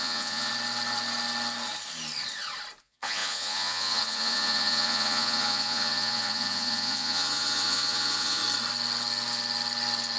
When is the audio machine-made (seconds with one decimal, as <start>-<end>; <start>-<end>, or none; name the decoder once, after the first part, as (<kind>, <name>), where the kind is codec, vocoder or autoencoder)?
0.0-0.5 (vocoder, Vocos); 2.8-8.4

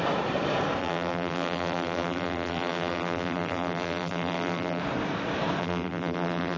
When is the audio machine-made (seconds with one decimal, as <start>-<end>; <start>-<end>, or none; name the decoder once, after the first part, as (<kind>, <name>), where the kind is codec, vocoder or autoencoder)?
0.8-4.8 (vocoder, BigVGAN v2); 5.6-6.6

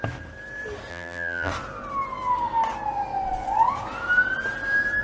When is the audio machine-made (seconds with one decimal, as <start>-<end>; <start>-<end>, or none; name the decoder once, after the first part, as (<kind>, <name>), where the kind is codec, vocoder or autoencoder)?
0.9-1.5 (vocoder, BigVGAN v2)

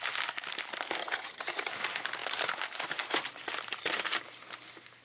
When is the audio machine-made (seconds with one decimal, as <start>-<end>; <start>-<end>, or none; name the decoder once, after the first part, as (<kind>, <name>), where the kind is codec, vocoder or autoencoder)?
1.0-1.7 (vocoder, HiFi-GAN)